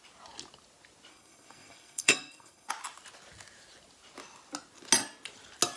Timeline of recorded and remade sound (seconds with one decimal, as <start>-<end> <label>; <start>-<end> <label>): 0.0-1.1 recorded; 1.1-2.7 remade; 2.7-5.8 recorded